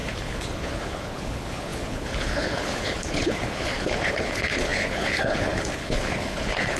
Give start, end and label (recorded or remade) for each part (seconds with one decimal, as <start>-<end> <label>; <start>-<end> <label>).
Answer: 0.0-6.8 remade